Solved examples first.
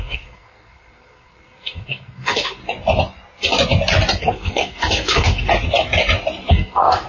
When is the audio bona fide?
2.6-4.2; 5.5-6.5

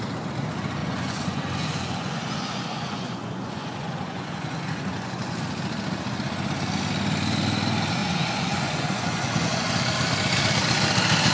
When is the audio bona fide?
0.0-0.8; 5.4-8.0; 9.7-11.3

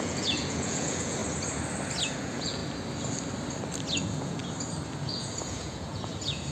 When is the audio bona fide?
1.2-2.1; 2.6-4.0; 4.4-5.0

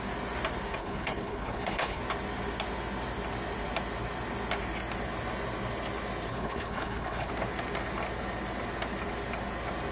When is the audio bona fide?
0.0-0.8; 2.0-6.3; 7.3-9.9

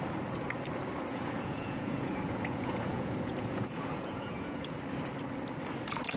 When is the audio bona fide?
0.0-1.1; 4.8-6.2

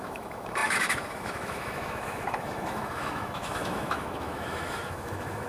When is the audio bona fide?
none

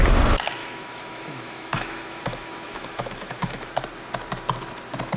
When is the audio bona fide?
0.0-0.6; 3.7-5.2

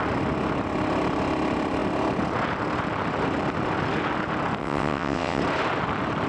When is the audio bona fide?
0.0-4.6; 5.4-6.3